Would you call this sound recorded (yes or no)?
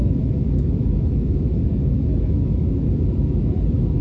no